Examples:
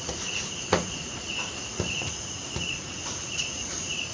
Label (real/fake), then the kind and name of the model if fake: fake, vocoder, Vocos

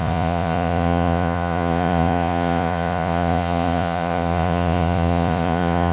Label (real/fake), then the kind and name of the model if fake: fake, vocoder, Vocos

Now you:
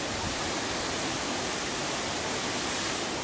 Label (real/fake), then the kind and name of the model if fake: real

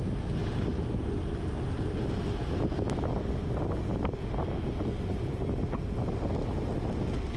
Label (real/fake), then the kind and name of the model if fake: real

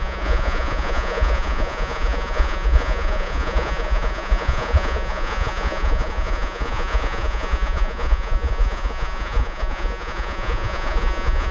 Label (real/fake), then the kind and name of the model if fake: fake, vocoder, Vocos